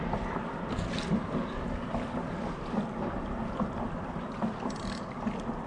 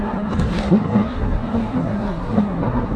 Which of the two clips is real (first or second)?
first